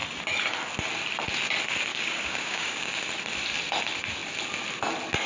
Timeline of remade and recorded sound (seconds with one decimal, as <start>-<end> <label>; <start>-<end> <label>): 0.0-1.9 recorded; 1.9-3.0 remade; 3.0-5.3 recorded